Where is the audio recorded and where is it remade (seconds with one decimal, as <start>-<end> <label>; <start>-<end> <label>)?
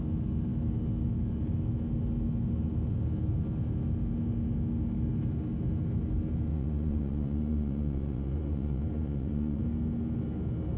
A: 0.0-6.5 recorded; 6.5-9.6 remade; 9.6-10.8 recorded